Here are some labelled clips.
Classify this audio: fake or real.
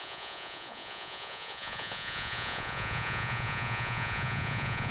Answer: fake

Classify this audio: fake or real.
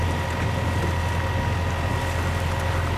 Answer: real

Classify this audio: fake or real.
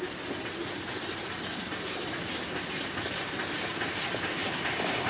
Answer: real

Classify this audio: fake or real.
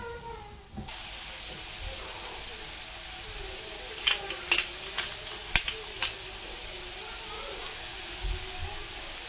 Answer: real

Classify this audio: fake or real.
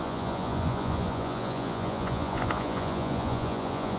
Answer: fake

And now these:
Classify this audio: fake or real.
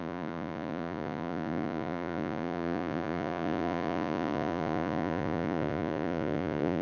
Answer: fake